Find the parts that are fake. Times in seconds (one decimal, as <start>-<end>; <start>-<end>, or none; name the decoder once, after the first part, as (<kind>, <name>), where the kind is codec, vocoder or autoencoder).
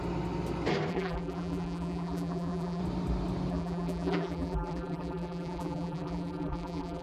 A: 0.9-2.8 (vocoder, BigVGAN v2); 3.5-7.0